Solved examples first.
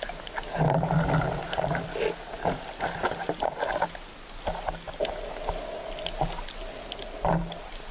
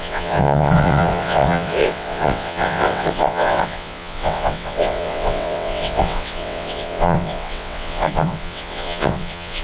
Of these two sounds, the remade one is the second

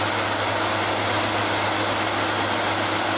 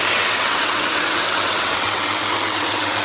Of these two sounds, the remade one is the second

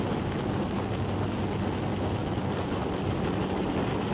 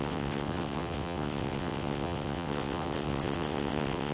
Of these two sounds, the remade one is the second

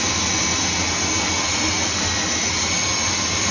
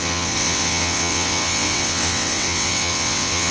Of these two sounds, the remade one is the second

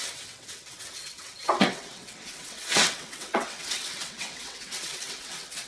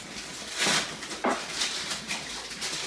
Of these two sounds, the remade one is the first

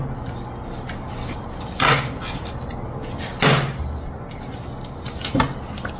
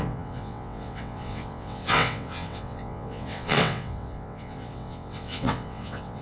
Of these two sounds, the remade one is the second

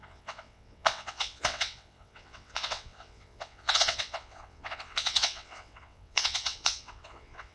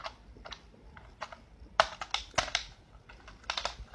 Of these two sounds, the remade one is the first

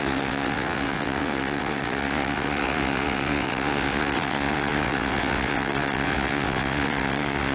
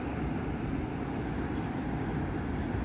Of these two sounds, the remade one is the first